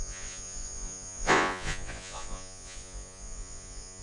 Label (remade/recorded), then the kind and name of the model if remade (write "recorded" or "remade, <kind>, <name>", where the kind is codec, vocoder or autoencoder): remade, vocoder, Vocos